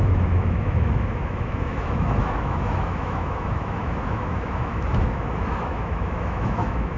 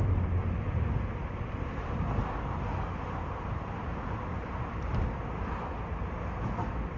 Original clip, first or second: second